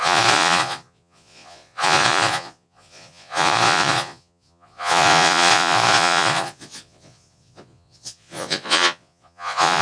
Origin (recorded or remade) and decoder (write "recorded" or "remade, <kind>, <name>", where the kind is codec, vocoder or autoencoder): remade, vocoder, Vocos